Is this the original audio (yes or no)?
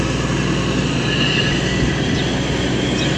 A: yes